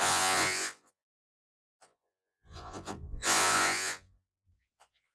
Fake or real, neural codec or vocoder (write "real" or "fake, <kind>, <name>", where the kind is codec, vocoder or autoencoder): fake, vocoder, Vocos